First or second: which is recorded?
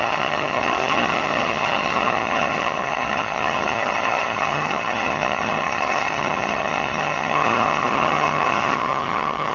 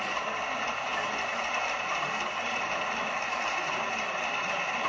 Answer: second